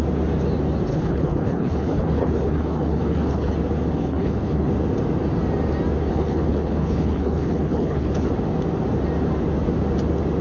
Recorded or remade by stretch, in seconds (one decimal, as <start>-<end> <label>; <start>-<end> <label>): 0.0-0.9 recorded; 0.9-3.5 remade; 3.5-4.0 recorded; 4.0-4.7 remade; 4.7-6.1 recorded; 6.1-8.3 remade; 8.3-10.4 recorded